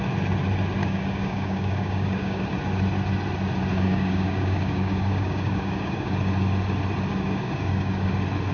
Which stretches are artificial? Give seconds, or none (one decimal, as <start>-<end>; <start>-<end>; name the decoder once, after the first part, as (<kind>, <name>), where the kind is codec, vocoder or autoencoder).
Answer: 0.8-2.4 (codec, DAC); 3.7-6.1; 7.1-8.1